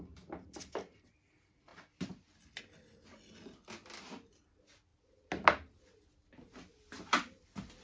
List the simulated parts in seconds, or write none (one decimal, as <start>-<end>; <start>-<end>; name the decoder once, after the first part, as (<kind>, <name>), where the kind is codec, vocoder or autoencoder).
none